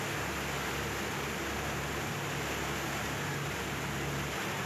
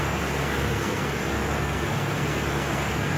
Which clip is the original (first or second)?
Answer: first